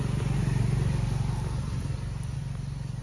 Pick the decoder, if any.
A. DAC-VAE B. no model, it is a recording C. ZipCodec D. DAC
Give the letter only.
B